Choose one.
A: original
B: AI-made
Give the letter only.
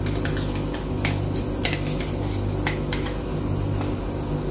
A